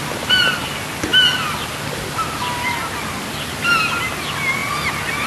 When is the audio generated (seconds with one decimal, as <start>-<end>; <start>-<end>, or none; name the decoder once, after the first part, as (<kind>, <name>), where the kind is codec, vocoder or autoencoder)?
none